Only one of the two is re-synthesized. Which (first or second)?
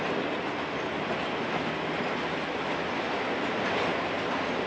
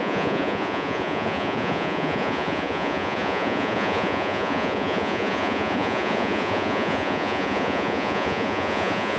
second